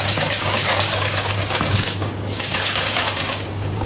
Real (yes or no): no